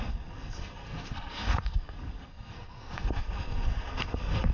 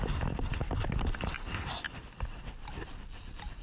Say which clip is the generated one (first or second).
first